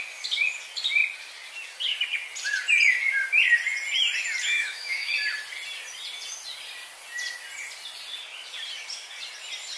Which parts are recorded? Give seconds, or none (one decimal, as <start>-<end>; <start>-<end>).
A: 0.0-4.5; 5.1-9.8